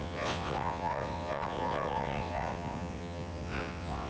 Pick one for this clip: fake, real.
fake